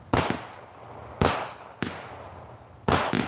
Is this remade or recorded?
recorded